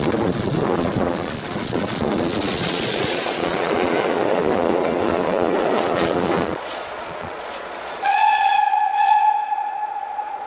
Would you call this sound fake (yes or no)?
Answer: yes